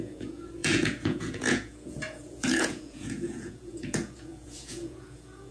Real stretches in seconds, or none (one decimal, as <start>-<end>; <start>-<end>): none